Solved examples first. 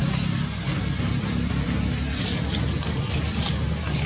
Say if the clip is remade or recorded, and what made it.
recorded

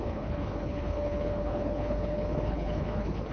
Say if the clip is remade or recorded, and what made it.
remade, codec, HILCodec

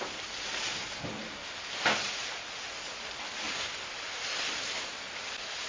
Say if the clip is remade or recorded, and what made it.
recorded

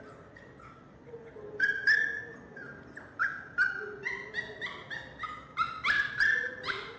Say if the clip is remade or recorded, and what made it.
recorded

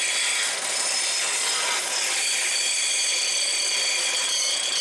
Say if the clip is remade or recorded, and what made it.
recorded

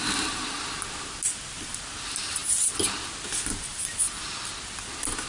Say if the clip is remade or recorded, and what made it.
recorded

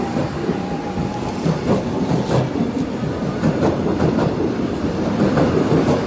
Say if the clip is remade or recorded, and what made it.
recorded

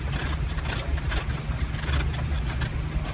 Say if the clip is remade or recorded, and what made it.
recorded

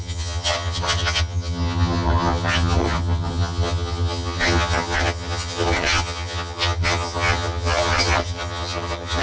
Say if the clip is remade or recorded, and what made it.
remade, vocoder, HiFi-GAN